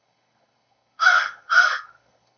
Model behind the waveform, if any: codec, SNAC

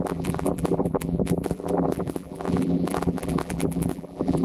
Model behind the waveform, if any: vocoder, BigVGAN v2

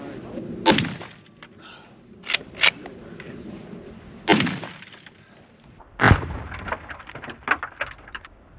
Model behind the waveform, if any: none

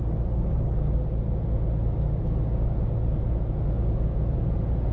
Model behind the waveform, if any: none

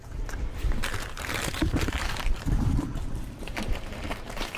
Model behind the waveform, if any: vocoder, BigVGAN v2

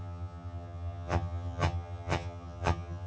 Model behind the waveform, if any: vocoder, HiFi-GAN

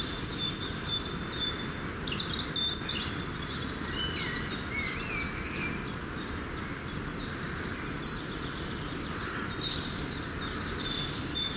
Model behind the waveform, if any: none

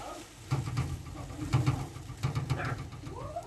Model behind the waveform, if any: none